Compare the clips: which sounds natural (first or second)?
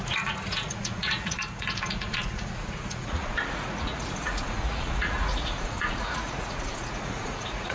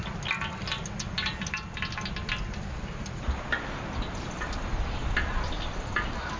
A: second